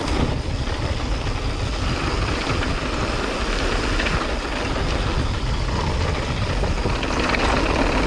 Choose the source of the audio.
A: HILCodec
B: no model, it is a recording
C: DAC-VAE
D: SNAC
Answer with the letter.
B